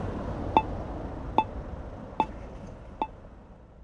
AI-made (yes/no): no